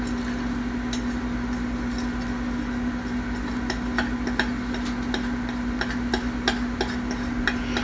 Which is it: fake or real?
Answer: real